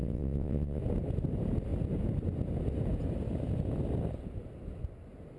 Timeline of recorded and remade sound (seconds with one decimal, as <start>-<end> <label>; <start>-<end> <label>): 0.0-0.8 remade; 0.8-5.4 recorded